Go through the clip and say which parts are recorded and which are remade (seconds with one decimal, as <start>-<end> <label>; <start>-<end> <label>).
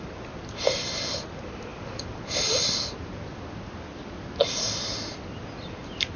0.0-6.2 recorded